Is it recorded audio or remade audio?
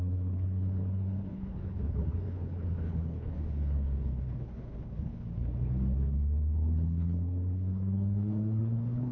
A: remade